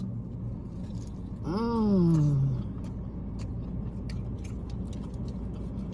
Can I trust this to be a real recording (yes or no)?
yes